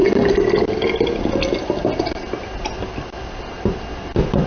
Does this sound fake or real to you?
real